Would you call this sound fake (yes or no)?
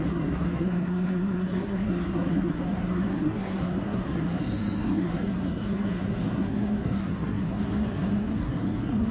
yes